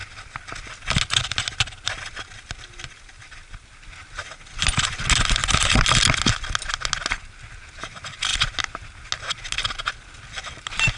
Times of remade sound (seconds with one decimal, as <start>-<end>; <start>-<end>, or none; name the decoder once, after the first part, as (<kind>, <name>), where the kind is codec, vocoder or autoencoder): none